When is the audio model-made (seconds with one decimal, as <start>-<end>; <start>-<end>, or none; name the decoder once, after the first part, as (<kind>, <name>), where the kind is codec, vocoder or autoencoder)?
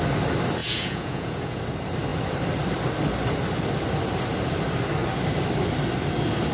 0.6-1.6 (vocoder, Vocos)